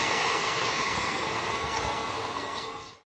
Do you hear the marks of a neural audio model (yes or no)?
yes